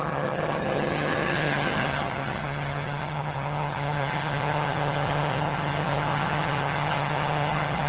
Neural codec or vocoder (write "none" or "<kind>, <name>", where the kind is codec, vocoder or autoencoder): vocoder, HiFi-GAN